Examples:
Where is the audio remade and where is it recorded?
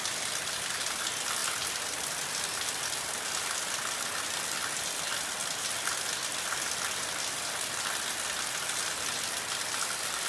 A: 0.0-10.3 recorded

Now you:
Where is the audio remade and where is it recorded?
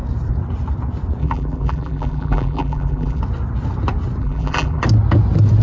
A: 0.0-1.2 recorded; 1.2-3.2 remade; 3.2-4.2 recorded; 4.2-4.8 remade; 4.8-5.6 recorded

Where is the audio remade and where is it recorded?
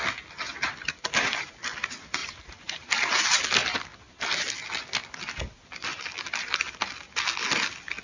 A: 0.0-2.2 recorded; 2.2-3.2 remade; 3.2-8.0 recorded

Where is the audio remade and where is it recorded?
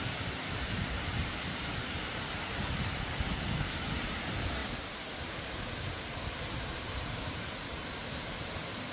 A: 0.0-8.9 remade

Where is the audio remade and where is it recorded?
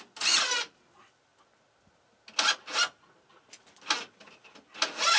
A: 0.0-5.2 recorded